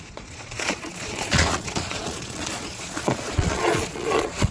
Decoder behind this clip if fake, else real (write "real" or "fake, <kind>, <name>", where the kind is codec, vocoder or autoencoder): fake, vocoder, Vocos